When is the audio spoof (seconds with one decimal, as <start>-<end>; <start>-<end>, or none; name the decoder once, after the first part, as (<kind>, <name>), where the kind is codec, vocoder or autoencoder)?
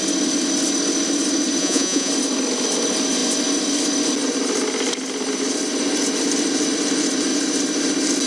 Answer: 1.6-2.1 (vocoder, Vocos)